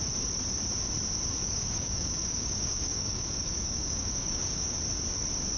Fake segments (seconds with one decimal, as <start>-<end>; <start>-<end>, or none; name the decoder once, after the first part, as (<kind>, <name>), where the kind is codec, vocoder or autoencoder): 1.4-4.8 (codec, DAC)